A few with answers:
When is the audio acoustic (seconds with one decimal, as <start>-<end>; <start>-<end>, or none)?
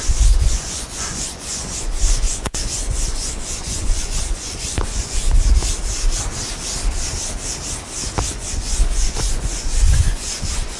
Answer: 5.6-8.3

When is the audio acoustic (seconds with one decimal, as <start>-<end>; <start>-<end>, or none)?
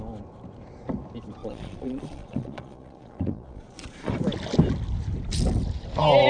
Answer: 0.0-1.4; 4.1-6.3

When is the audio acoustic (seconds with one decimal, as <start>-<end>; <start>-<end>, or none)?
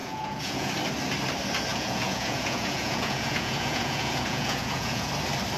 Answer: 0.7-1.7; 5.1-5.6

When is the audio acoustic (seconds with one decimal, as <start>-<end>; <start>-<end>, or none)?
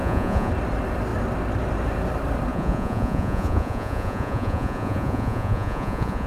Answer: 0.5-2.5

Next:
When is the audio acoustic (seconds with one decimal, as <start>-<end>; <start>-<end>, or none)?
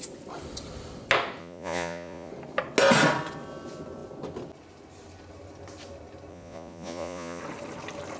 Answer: 0.0-1.4; 2.3-6.3; 7.4-8.2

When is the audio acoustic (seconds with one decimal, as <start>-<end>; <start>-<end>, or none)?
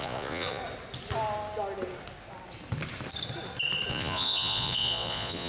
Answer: 0.6-3.9